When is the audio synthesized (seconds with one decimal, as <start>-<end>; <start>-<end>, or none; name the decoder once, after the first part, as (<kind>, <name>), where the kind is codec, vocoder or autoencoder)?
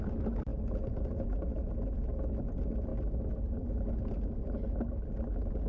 none